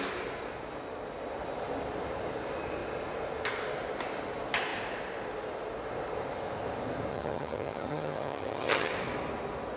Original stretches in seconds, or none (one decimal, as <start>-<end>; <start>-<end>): 0.0-7.1; 8.9-9.8